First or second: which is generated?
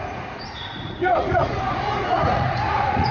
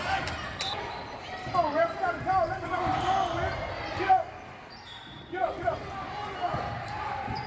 first